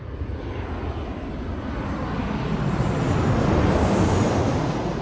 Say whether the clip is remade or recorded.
recorded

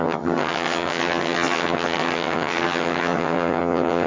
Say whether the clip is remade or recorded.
remade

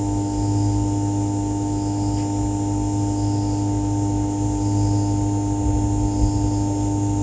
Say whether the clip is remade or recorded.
recorded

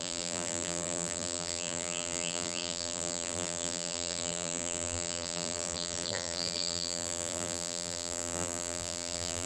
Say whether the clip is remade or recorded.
remade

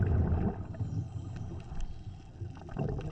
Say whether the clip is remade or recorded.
recorded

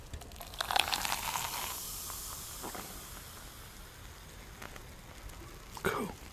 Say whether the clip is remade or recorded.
recorded